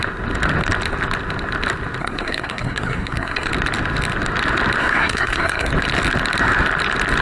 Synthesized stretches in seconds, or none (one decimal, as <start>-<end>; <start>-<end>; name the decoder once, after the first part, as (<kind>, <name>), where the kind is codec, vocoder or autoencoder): 2.0-3.5 (codec, SNAC); 4.8-5.7